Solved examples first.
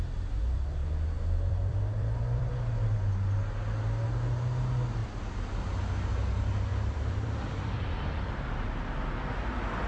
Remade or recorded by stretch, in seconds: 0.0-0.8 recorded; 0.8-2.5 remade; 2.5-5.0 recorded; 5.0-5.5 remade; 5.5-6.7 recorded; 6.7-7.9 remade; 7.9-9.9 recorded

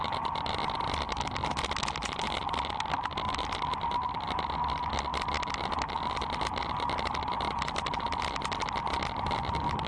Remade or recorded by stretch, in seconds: 0.0-9.9 recorded

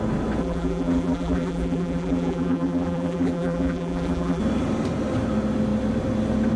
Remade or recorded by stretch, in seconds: 0.0-0.4 recorded; 0.4-4.4 remade; 4.4-6.6 recorded